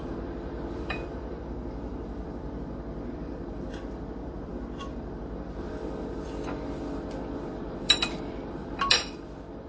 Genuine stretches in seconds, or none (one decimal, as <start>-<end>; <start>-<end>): none

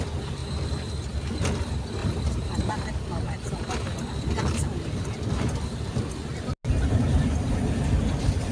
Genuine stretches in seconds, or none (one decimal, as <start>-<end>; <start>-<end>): 0.0-2.0; 2.9-8.5